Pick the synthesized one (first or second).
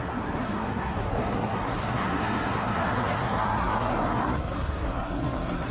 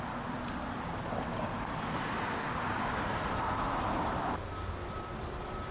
first